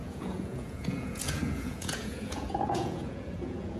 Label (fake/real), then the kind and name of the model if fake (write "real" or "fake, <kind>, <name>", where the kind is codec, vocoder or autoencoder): fake, vocoder, Vocos